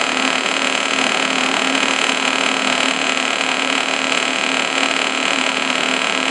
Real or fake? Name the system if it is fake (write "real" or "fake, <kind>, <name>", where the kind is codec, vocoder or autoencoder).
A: fake, vocoder, Vocos